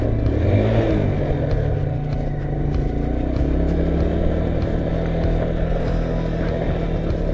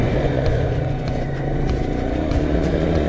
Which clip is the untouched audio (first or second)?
first